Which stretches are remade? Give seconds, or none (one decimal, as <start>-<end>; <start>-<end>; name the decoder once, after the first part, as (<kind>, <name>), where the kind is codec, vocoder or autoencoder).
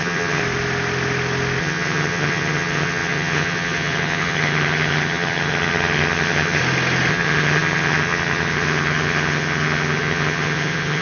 0.0-0.4 (vocoder, HiFi-GAN); 1.6-6.6; 7.1-11.0